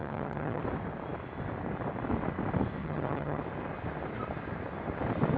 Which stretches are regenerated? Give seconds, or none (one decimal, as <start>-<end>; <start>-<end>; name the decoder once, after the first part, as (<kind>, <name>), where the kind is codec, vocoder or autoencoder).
0.0-0.6 (vocoder, HiFi-GAN); 2.8-3.4